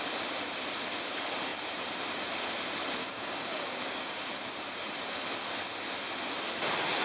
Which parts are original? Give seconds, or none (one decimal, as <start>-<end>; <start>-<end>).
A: 0.0-3.0; 4.3-7.0